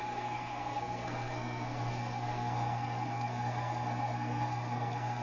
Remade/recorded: remade